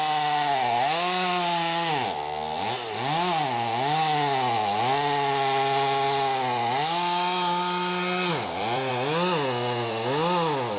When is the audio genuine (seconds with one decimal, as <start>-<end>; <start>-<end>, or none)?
0.0-8.3; 8.9-10.8